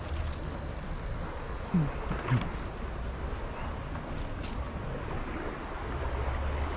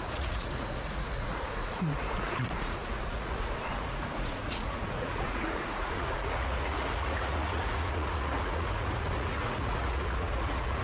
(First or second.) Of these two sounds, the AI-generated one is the second